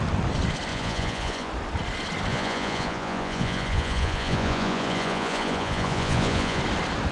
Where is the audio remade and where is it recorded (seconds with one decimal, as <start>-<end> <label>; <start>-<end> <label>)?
0.0-0.7 recorded; 0.7-1.5 remade; 1.5-2.3 recorded; 2.3-6.6 remade; 6.6-7.1 recorded